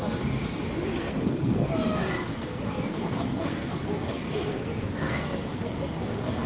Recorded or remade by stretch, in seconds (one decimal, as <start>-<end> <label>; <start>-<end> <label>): 0.0-0.9 recorded; 0.9-1.7 remade; 1.7-2.3 recorded; 2.3-6.5 remade